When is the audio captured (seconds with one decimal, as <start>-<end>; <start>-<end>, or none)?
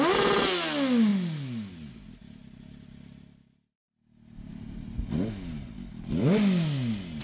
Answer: 0.0-7.2